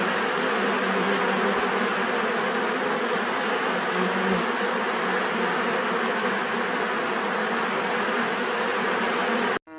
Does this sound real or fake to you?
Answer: real